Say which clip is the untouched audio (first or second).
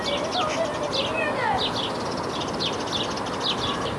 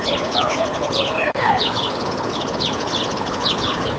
first